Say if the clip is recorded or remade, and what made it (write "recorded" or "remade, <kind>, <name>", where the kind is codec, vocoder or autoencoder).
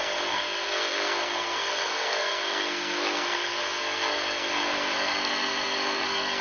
remade, codec, SNAC